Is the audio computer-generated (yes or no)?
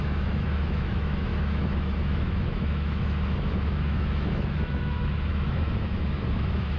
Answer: yes